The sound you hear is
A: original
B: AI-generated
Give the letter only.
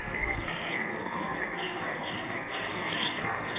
B